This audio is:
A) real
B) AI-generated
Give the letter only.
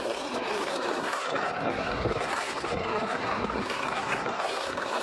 B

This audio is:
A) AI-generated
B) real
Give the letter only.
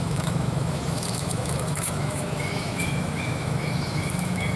A